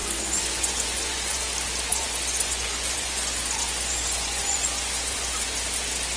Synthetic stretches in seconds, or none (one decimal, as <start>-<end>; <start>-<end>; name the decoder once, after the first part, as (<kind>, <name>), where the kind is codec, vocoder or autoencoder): 0.0-1.4 (vocoder, Vocos); 1.9-5.6